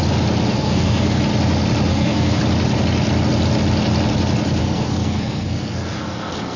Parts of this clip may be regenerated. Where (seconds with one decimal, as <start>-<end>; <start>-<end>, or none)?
0.5-1.2; 1.9-2.4; 4.6-6.6